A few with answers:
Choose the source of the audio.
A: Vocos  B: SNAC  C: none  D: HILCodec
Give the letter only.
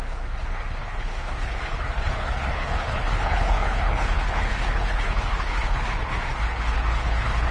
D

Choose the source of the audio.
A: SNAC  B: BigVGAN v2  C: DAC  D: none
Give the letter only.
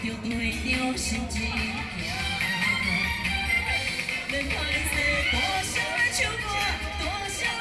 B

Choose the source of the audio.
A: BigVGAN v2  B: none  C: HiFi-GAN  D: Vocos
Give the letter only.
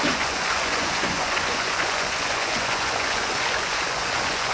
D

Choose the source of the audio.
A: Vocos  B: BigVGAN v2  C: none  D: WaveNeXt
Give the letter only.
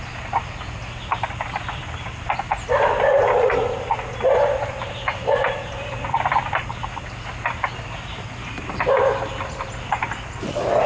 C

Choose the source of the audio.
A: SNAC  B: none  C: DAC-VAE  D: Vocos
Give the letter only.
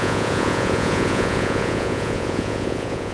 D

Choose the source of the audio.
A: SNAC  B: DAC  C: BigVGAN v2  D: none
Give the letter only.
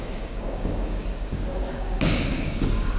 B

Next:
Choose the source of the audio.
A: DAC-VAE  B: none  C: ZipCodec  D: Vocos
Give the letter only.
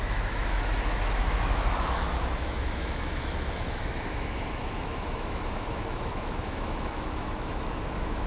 A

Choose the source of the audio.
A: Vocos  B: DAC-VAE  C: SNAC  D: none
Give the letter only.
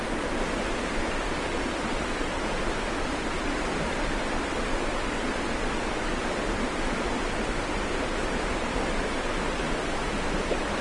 D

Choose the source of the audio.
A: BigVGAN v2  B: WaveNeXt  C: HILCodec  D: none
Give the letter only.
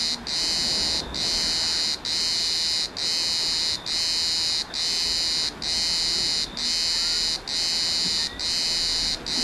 D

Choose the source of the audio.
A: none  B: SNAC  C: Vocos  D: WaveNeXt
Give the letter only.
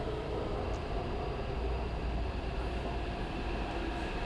A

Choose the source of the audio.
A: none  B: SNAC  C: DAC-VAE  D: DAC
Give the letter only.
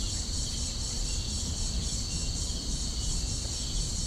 A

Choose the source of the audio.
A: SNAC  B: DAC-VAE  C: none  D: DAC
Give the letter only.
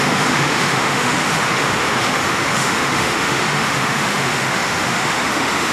B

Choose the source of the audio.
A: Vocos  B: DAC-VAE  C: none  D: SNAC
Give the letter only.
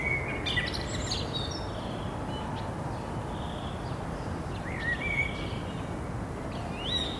C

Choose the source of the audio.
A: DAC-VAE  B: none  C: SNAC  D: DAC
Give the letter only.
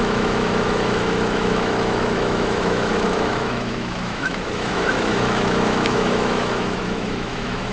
A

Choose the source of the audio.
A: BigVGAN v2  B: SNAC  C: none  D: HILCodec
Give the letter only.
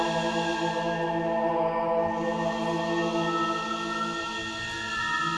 C